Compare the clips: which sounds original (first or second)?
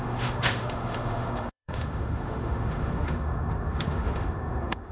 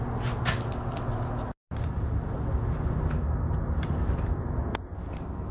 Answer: second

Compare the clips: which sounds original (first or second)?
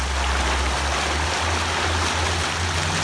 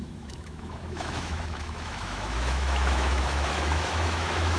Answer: first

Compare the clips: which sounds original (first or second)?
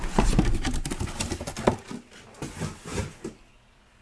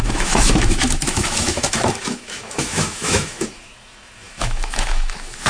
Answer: first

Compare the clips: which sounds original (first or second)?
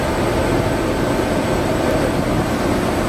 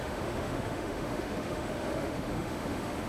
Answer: first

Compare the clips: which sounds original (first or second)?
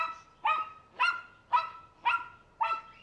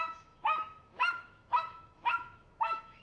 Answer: first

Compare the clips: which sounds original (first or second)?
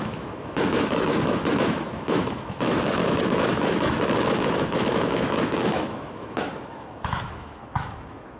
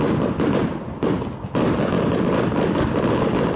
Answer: second